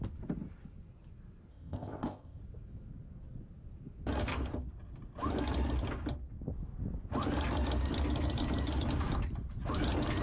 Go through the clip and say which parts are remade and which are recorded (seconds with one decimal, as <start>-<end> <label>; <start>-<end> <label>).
0.0-1.5 recorded; 1.5-2.4 remade; 2.4-10.2 recorded